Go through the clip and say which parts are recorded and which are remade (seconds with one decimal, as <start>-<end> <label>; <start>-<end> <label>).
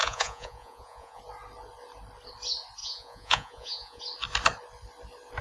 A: 0.0-1.2 remade; 1.2-2.8 recorded; 2.8-4.0 remade; 4.0-5.4 recorded